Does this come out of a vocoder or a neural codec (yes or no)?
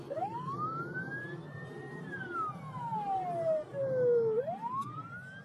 no